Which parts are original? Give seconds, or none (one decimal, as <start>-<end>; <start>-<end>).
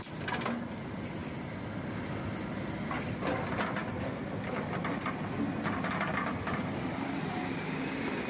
0.0-8.3